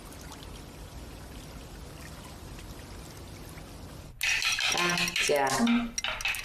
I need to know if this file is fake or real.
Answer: real